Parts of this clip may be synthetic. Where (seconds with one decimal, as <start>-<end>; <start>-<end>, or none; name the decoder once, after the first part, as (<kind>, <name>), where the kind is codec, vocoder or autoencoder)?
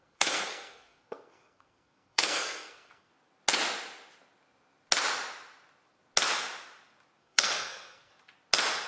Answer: 0.0-3.1 (codec, SNAC); 7.2-8.1